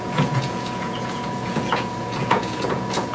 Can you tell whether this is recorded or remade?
remade